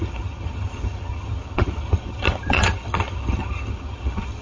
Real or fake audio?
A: fake